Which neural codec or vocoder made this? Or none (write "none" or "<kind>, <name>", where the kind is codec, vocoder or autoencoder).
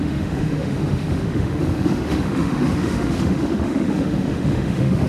autoencoder, DAC-VAE